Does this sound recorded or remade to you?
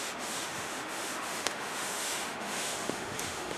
remade